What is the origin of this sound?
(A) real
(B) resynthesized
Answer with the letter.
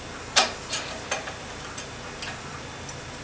A